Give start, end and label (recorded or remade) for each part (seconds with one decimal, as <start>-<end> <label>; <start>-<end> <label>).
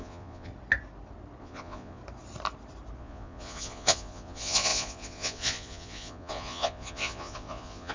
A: 0.0-0.5 remade; 0.5-1.4 recorded; 1.4-2.0 remade; 2.0-3.0 recorded; 3.0-7.9 remade